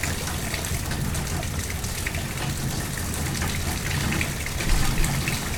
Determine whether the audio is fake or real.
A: real